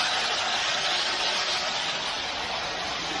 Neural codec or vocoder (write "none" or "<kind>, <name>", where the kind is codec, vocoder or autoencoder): none